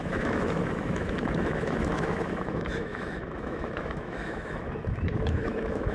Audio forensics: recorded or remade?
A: remade